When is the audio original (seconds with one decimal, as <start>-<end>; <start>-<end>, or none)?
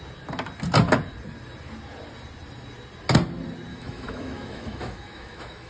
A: 0.0-3.7